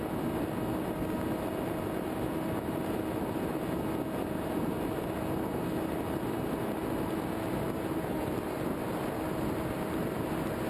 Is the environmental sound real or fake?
real